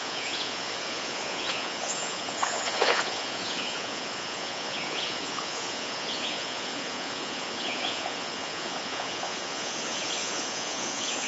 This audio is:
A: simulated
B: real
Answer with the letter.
A